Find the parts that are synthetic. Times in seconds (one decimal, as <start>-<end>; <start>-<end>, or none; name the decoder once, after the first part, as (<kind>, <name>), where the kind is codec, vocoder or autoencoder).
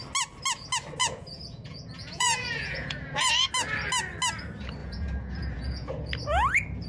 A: 1.0-3.5 (vocoder, Vocos); 4.8-5.9